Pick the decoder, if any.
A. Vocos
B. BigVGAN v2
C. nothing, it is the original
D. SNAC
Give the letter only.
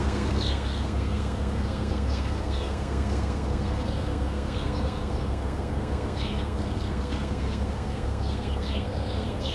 D